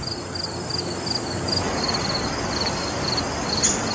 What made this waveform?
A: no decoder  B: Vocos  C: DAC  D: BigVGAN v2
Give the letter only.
A